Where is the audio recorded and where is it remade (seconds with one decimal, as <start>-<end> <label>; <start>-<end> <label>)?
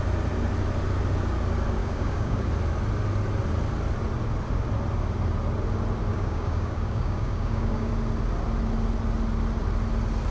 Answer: 0.0-1.8 recorded; 1.8-2.5 remade; 2.5-6.1 recorded; 6.1-7.9 remade; 7.9-10.3 recorded